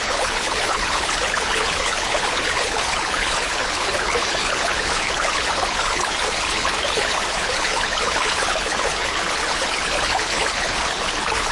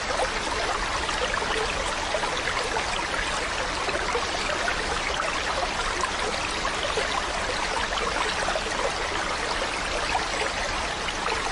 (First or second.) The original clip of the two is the second